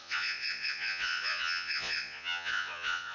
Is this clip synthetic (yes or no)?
yes